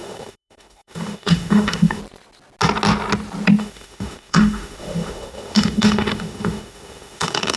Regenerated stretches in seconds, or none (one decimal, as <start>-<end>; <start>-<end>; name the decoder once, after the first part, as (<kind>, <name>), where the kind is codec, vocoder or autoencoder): 0.0-2.0 (autoencoder, DAC-VAE); 3.6-7.6